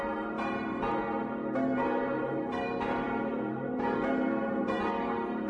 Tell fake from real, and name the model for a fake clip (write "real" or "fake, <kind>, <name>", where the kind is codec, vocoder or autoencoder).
fake, vocoder, BigVGAN v2